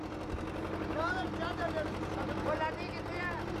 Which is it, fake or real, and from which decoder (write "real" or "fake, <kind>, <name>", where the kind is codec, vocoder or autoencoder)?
real